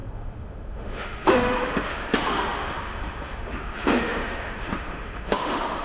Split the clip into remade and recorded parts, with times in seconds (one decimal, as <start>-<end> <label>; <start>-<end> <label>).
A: 0.0-5.8 remade